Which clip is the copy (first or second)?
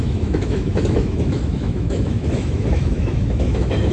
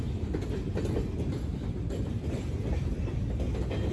first